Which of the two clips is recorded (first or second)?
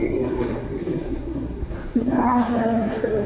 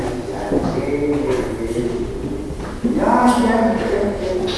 second